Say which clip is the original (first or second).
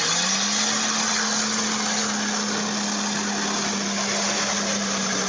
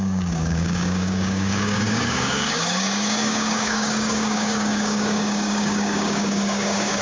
first